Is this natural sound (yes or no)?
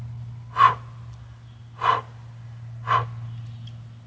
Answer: yes